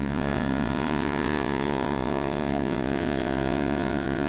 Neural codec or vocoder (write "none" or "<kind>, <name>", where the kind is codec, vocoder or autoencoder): vocoder, WaveNeXt